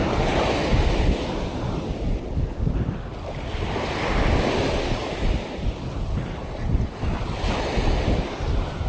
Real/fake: real